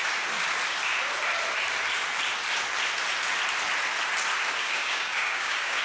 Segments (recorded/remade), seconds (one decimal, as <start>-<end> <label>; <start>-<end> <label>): 0.0-4.6 recorded; 4.6-5.8 remade